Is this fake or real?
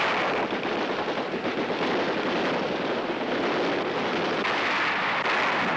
real